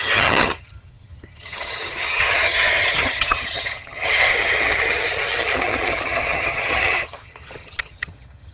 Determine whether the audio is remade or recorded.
remade